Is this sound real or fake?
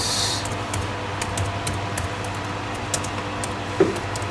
real